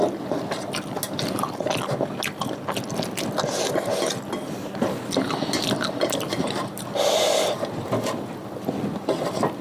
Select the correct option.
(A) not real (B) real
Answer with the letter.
B